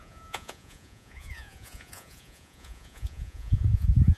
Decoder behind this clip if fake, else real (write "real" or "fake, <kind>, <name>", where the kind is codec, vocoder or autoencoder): fake, vocoder, Vocos